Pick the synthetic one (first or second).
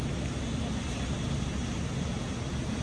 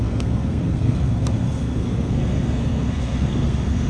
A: second